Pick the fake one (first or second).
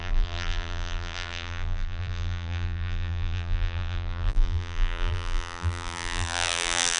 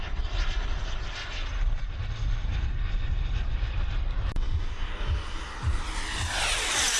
first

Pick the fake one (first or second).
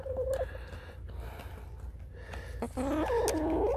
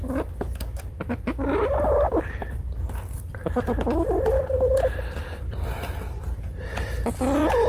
second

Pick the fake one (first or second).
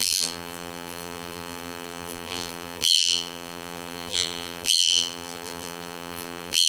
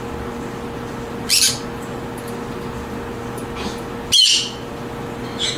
first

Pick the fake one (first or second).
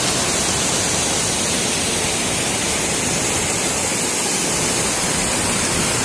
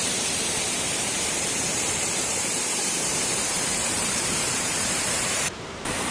second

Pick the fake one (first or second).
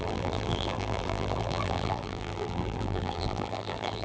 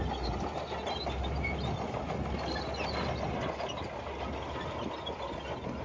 first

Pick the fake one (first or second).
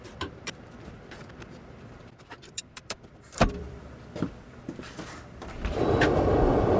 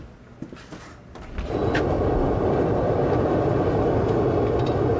first